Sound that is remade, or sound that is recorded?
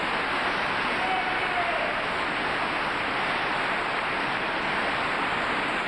recorded